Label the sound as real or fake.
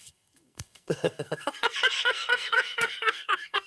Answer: fake